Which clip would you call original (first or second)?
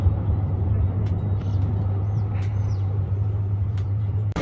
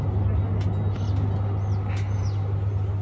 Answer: second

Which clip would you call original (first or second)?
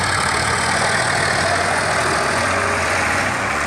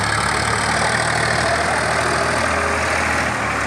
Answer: second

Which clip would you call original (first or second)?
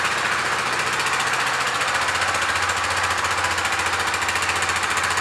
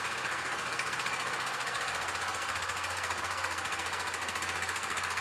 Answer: first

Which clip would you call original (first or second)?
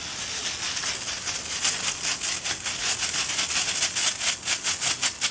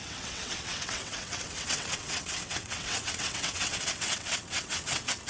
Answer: first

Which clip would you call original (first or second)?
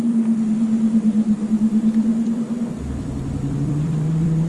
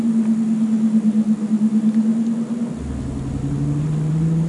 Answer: second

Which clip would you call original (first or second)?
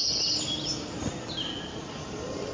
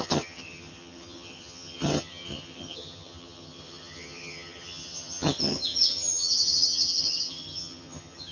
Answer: first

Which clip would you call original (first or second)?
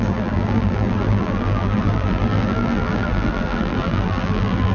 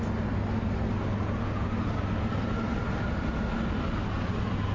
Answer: second